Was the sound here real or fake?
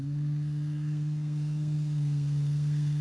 fake